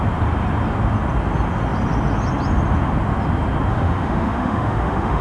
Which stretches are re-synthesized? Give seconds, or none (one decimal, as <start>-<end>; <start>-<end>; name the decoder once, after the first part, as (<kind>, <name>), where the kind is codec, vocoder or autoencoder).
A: 3.7-5.2 (autoencoder, DAC-VAE)